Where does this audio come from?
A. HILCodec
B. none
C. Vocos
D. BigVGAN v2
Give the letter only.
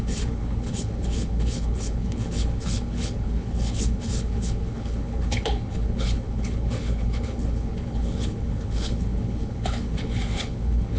A